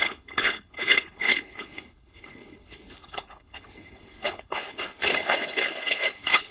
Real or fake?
fake